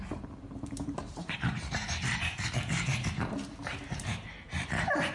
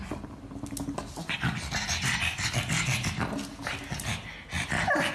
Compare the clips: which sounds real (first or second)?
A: second